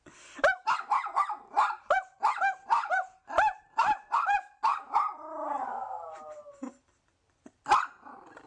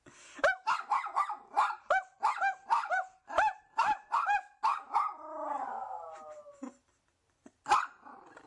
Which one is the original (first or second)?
second